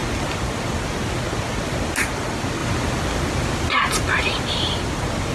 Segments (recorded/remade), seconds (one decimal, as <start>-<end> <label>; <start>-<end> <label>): 0.0-5.3 recorded